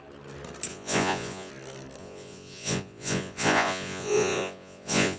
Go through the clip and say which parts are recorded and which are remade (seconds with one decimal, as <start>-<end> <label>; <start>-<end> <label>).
0.0-0.7 recorded; 0.7-1.5 remade; 1.5-2.0 recorded; 2.0-5.2 remade